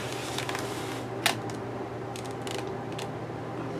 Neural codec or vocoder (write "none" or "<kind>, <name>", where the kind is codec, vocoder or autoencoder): none